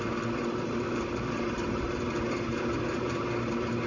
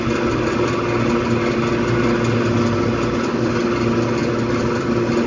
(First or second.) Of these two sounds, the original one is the second